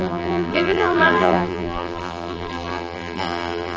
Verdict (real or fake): fake